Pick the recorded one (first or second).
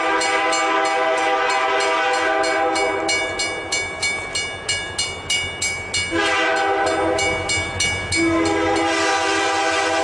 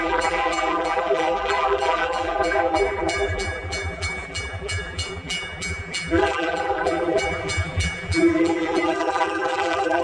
first